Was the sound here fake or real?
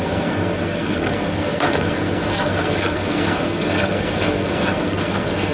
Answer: fake